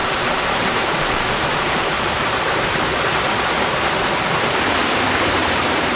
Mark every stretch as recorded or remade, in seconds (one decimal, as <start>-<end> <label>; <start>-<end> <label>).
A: 0.0-2.8 remade; 2.8-5.4 recorded; 5.4-6.0 remade